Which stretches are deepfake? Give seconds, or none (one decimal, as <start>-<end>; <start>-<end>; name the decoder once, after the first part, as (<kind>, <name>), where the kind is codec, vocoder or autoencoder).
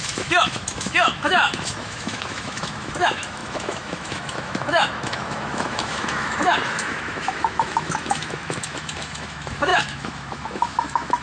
0.0-11.2 (autoencoder, DAC-VAE)